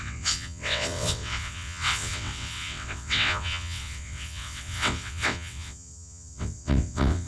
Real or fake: fake